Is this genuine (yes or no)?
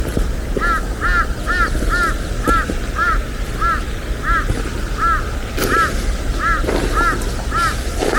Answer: yes